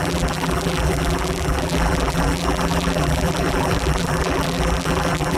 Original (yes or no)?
no